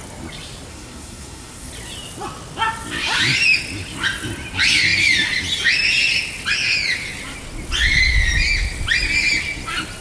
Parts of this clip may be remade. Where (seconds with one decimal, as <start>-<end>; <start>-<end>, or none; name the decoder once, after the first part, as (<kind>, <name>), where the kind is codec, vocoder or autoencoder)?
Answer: 0.7-1.7 (codec, SNAC)